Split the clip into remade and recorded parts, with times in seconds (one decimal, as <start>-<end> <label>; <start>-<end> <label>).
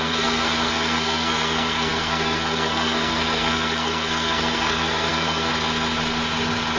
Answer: 0.0-5.5 remade; 5.5-6.8 recorded